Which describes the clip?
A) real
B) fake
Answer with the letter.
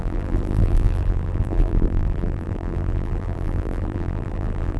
B